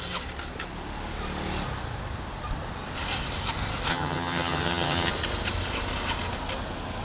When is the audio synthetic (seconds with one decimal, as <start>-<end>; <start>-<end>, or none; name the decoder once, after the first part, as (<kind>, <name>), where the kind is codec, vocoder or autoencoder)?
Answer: 3.9-5.1 (vocoder, HiFi-GAN)